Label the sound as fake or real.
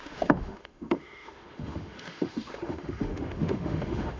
fake